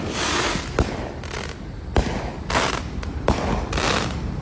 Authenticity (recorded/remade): recorded